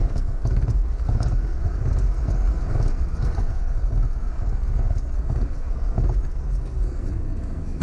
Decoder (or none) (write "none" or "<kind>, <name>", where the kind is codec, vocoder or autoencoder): codec, SNAC